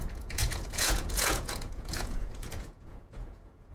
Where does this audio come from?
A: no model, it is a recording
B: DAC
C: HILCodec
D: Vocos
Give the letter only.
D